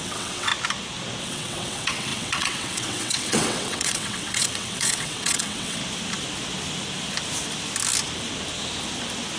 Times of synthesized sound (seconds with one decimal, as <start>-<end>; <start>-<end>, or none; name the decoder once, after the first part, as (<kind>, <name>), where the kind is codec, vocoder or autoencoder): 0.0-0.5 (vocoder, WaveNeXt); 1.2-5.8